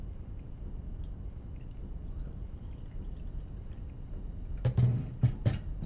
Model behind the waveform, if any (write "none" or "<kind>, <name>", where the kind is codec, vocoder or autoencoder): vocoder, BigVGAN v2